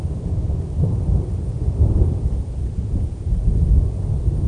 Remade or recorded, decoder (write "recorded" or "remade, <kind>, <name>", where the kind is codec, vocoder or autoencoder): recorded